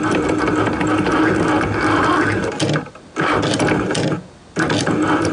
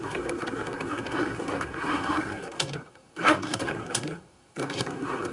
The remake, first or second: second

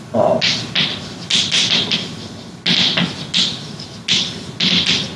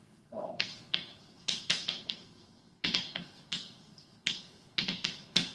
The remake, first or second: second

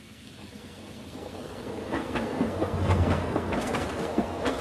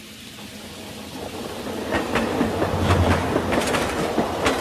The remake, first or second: first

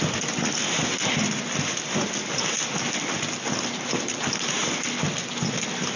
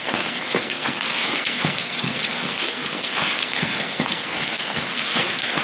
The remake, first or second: second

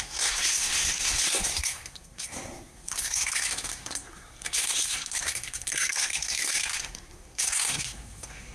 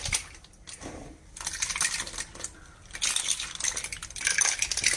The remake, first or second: first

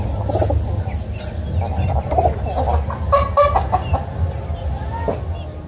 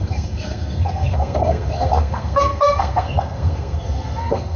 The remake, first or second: second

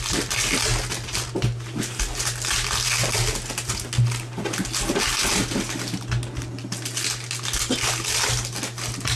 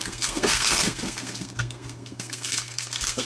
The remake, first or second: second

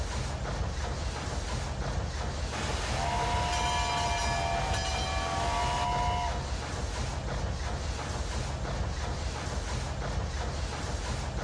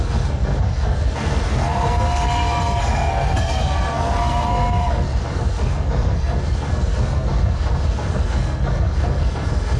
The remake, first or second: second